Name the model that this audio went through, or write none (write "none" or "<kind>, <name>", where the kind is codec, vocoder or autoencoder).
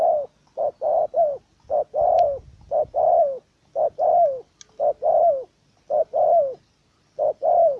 none